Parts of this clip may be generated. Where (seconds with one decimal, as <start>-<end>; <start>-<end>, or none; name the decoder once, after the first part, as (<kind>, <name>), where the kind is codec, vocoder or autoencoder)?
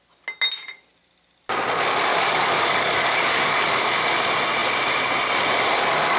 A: 2.1-3.8 (codec, DAC)